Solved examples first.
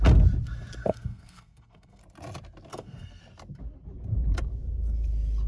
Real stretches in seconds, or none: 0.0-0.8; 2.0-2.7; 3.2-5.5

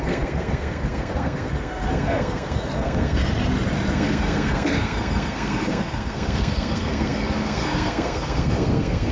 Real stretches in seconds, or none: 3.2-3.9